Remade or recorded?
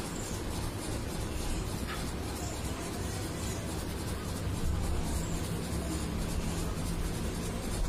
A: recorded